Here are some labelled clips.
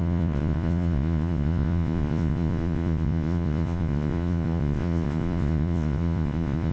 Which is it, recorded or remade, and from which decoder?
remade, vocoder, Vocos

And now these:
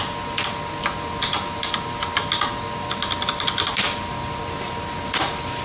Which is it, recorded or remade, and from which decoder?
recorded